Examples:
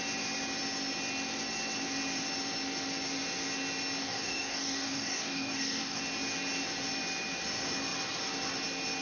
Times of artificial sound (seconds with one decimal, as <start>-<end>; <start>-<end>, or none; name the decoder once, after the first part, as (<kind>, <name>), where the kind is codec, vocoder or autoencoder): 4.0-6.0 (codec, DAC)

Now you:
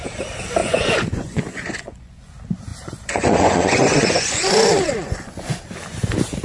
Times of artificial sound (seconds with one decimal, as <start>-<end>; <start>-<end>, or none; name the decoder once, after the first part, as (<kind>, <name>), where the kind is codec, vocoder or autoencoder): 0.6-2.3 (vocoder, Vocos); 2.7-5.6

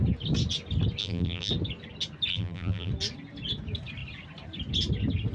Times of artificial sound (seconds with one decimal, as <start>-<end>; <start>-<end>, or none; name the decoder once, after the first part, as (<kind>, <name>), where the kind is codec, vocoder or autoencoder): 1.0-1.5 (vocoder, BigVGAN v2); 2.3-2.9

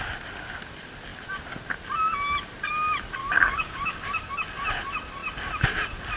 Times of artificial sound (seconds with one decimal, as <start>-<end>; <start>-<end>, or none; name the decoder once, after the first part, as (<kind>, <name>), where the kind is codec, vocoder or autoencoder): 3.2-4.3 (codec, DAC)

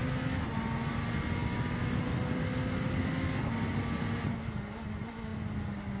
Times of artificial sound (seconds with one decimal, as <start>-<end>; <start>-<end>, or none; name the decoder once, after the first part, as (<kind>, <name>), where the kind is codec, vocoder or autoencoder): none

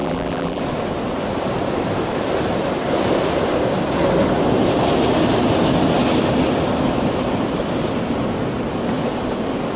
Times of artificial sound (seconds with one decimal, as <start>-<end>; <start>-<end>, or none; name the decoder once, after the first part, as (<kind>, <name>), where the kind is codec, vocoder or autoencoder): 0.0-0.6 (vocoder, BigVGAN v2)

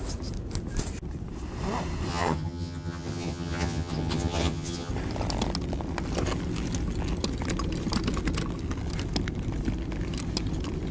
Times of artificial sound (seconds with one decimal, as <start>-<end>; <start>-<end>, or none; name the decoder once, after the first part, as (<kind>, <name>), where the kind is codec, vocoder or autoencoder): 2.1-4.9 (vocoder, HiFi-GAN)